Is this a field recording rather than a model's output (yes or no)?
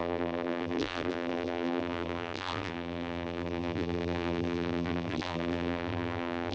no